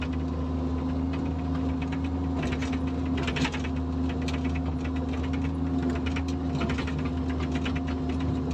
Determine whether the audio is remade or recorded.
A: recorded